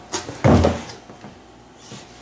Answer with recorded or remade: recorded